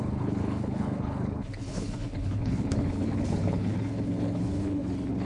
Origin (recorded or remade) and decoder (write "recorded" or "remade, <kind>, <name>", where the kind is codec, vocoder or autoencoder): remade, codec, HILCodec